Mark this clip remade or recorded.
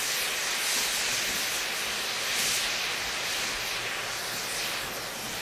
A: recorded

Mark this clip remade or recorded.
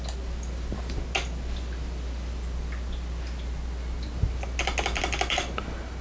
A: recorded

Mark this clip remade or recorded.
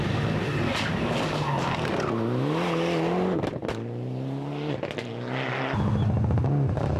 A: recorded